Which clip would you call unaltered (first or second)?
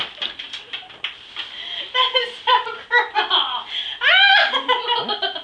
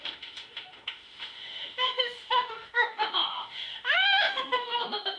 first